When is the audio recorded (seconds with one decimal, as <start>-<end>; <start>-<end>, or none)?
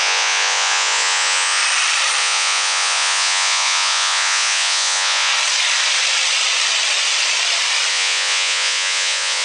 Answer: 1.6-2.2; 5.3-7.9